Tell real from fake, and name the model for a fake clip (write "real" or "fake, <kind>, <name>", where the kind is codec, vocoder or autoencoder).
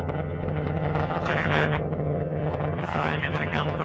fake, vocoder, HiFi-GAN